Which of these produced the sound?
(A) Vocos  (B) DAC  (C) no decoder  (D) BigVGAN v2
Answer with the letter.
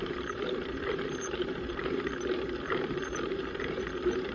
D